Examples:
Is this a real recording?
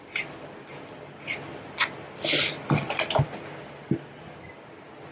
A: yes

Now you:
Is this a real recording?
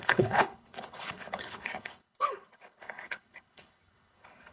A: no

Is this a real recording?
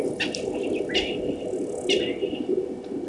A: yes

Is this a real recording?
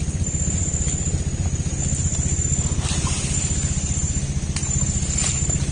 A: yes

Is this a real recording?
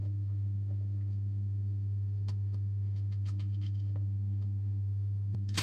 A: no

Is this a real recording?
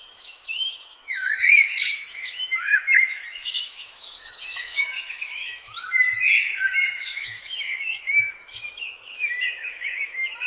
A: no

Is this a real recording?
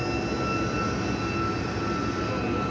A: yes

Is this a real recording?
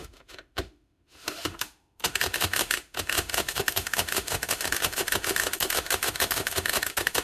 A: no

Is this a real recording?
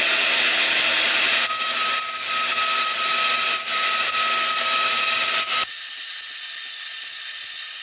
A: yes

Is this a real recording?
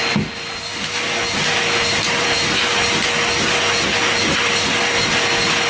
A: yes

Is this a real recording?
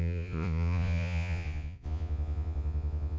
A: no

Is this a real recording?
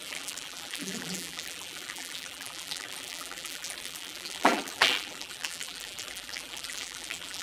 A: no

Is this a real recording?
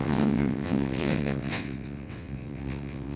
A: no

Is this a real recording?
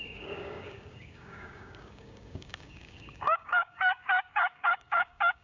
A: no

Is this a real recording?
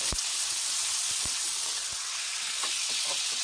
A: no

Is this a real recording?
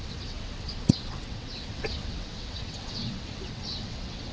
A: no